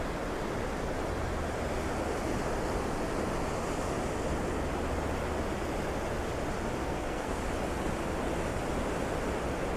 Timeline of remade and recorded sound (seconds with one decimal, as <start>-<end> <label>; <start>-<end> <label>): 0.0-6.8 recorded; 6.8-7.4 remade; 7.4-9.8 recorded